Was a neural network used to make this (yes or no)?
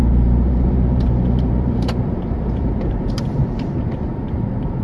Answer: yes